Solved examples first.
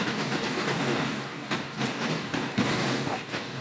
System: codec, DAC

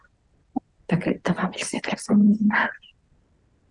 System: none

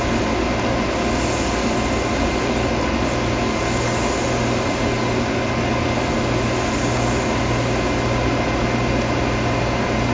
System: none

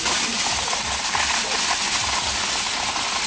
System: none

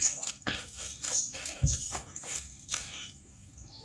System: codec, DAC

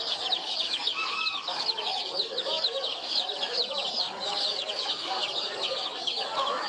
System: codec, DAC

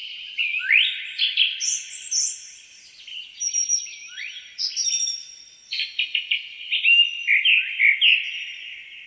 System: none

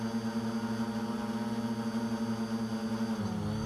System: none